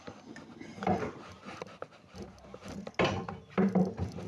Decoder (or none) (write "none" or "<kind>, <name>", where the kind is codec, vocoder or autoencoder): none